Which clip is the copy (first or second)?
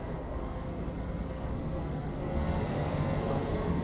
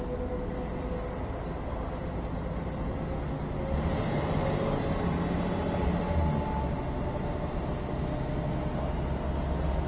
first